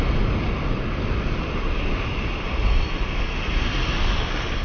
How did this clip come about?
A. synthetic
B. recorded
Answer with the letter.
B